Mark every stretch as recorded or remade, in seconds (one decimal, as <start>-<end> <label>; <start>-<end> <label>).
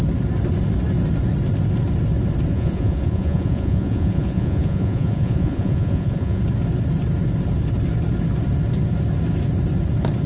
0.0-2.5 recorded; 2.5-6.4 remade; 6.4-10.3 recorded